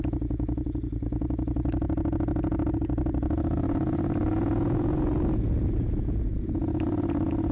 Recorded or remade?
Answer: remade